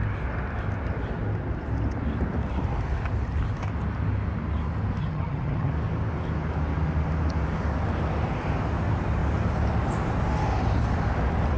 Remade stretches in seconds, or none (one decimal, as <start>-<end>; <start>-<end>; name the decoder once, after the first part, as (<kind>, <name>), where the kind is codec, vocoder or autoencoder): 5.0-5.7 (vocoder, HiFi-GAN)